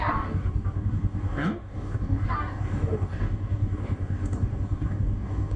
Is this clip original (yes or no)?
no